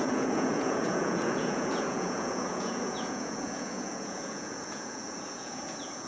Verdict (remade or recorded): remade